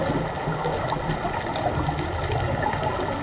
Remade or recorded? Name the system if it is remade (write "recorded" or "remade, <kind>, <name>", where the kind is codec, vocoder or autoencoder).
recorded